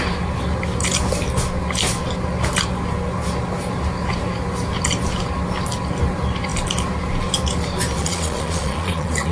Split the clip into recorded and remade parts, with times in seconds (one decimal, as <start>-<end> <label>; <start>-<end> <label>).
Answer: 0.0-8.0 recorded; 8.0-9.3 remade